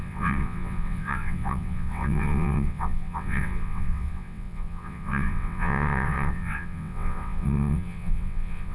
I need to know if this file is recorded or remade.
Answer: remade